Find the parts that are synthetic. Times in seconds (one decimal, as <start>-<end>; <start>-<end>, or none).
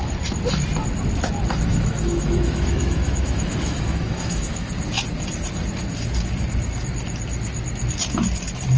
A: 1.7-4.7